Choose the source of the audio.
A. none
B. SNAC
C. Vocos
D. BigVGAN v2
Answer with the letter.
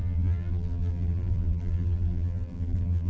D